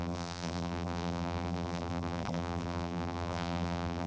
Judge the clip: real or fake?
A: fake